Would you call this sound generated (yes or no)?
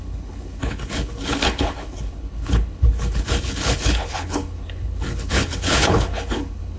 yes